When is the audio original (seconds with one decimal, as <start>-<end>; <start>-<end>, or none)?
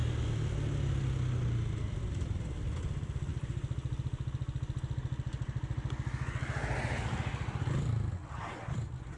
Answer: 0.0-9.2